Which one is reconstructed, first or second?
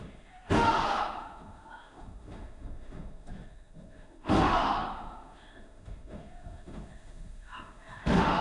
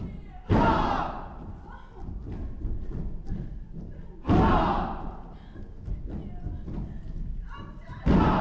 first